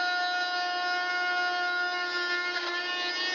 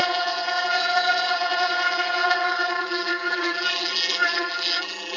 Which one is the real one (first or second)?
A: first